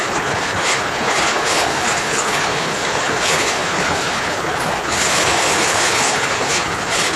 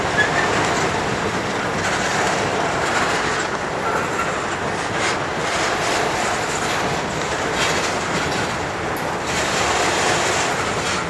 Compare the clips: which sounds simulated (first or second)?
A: first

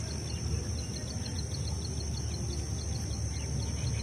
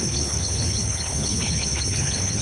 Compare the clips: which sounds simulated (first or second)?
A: second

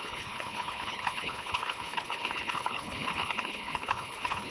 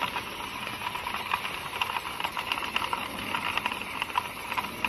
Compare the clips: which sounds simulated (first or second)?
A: first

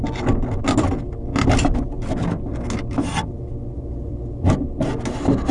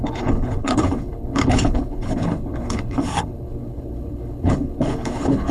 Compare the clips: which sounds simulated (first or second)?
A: second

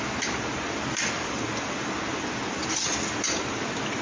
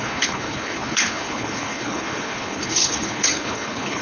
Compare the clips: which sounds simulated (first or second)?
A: second